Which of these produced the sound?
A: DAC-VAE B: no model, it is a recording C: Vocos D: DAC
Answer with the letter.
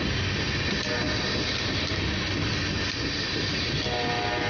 B